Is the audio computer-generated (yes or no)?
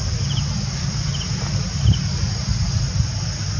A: no